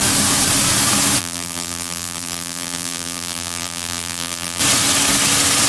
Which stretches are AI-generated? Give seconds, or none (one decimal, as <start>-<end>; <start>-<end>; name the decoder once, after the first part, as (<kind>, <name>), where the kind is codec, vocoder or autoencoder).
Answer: 1.2-4.6 (vocoder, BigVGAN v2)